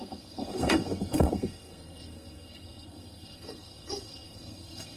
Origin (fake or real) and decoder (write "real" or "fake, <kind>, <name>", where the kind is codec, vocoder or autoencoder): fake, codec, SNAC